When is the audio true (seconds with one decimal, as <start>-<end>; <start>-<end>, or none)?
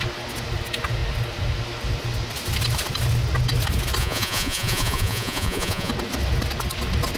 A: 0.0-4.0; 5.9-7.2